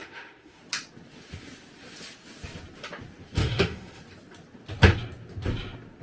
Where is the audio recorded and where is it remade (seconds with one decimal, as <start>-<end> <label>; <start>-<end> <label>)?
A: 0.0-0.6 remade; 0.6-3.4 recorded; 3.4-4.0 remade; 4.0-6.0 recorded